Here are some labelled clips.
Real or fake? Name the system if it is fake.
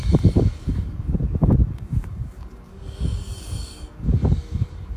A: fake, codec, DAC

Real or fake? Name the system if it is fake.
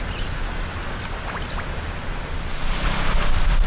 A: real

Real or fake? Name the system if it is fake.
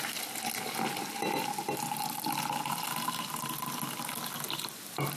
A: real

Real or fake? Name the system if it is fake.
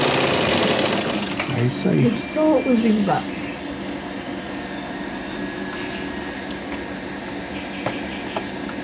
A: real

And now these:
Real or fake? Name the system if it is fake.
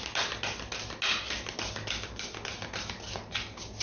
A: real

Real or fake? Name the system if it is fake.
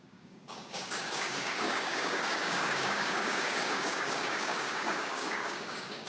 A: fake, codec, DAC